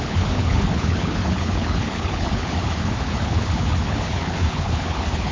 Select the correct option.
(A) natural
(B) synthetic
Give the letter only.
B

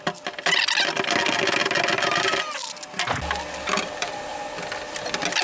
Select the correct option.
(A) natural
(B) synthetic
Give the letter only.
A